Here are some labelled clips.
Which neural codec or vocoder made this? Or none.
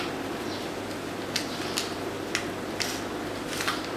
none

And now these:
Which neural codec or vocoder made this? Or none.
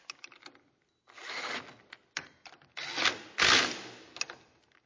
none